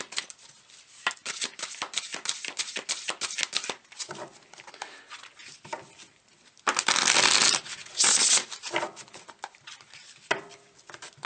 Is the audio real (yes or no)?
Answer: yes